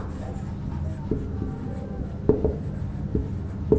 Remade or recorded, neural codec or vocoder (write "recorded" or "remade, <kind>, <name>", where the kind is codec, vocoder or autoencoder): recorded